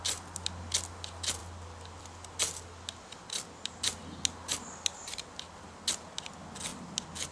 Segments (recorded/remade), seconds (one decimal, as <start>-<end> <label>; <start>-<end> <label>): 0.0-7.3 recorded